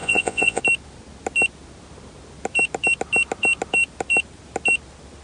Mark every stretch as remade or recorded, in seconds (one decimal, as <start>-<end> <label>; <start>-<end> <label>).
0.0-0.6 remade; 0.6-5.2 recorded